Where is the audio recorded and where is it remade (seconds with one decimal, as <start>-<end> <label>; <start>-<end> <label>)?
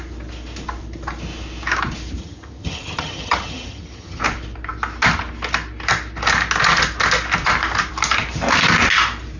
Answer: 0.0-2.2 recorded; 2.2-4.2 remade; 4.2-9.4 recorded